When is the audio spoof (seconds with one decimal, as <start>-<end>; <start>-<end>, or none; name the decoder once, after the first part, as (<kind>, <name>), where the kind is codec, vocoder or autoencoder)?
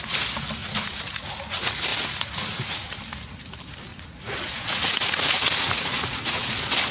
0.6-1.4 (vocoder, Vocos); 1.9-2.9; 3.9-6.5